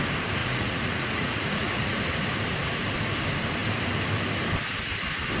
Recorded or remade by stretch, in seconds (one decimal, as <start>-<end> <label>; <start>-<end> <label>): 0.0-0.4 recorded; 0.4-2.0 remade; 2.0-5.4 recorded